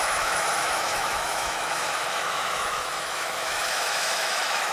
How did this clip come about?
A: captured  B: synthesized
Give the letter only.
B